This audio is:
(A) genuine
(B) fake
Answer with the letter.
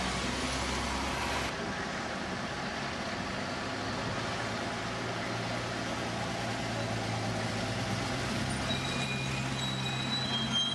A